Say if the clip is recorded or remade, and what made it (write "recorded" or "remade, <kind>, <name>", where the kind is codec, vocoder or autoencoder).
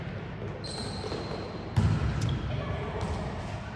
recorded